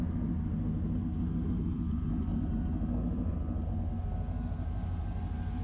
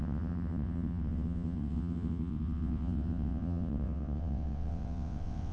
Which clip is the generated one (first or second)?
second